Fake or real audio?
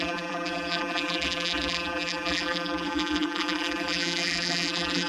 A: fake